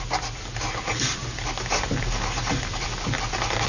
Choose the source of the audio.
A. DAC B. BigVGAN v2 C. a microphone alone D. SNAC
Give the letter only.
C